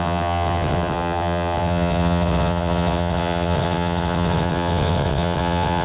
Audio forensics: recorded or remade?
remade